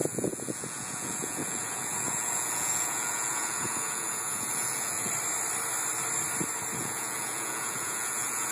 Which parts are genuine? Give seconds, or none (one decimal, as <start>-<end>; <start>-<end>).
5.1-6.8